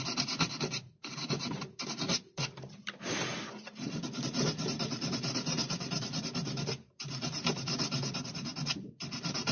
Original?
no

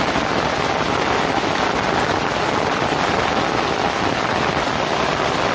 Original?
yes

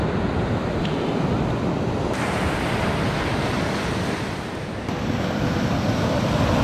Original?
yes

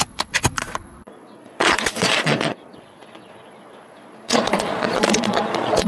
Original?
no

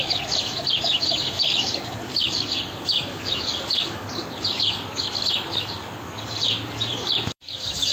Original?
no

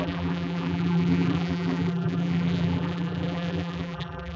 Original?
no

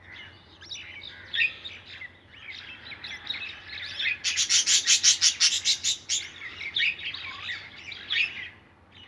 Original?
yes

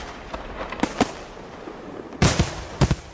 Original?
yes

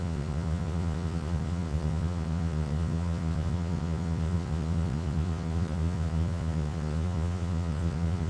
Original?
no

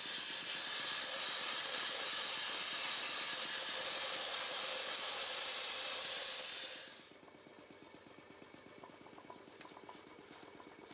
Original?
yes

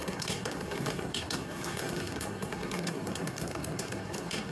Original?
no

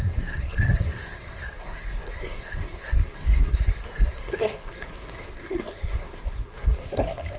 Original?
no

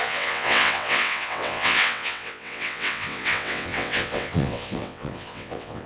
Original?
no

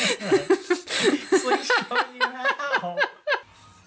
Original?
yes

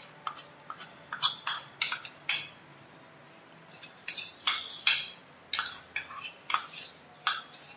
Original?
yes